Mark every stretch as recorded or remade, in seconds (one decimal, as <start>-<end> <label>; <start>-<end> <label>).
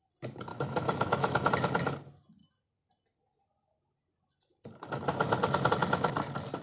0.0-0.5 recorded; 0.5-1.5 remade; 1.5-6.6 recorded